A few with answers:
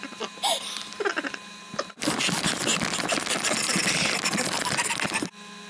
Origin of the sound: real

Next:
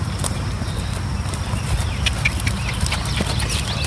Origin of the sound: real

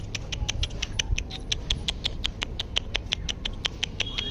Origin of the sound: real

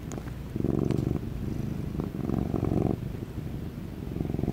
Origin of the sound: fake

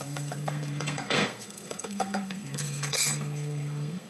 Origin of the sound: fake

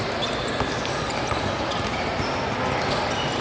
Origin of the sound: real